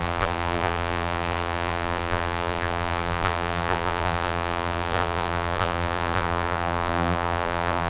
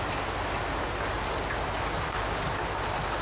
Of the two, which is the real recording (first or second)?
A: second